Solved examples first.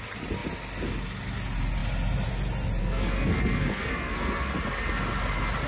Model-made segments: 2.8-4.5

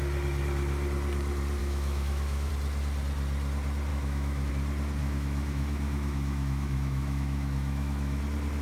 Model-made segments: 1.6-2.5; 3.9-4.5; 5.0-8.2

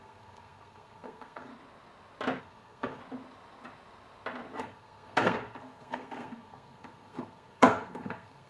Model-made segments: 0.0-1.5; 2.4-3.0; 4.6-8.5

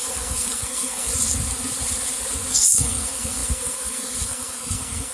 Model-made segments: 0.0-1.1; 2.5-5.1